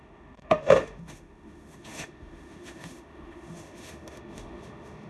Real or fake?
fake